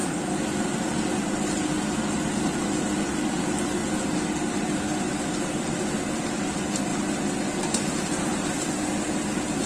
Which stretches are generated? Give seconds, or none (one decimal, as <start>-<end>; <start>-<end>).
none